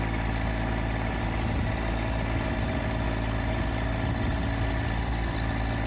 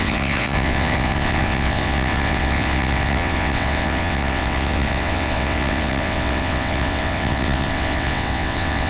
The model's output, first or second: second